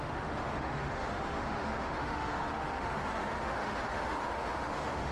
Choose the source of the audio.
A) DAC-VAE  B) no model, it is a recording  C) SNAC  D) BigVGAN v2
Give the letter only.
A